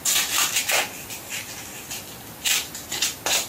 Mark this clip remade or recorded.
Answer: recorded